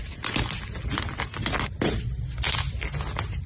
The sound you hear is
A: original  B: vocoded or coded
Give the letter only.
A